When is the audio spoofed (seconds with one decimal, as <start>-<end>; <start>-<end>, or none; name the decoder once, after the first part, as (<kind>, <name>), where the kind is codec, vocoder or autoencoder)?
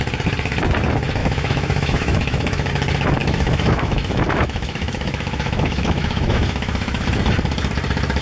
1.2-2.7 (autoencoder, DAC-VAE); 3.2-7.1